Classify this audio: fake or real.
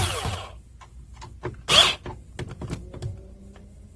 real